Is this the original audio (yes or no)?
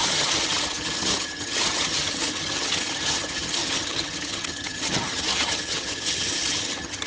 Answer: no